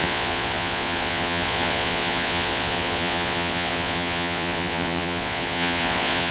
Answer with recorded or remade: remade